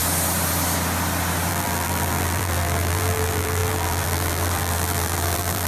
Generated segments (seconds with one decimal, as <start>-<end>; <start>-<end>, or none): 1.5-5.7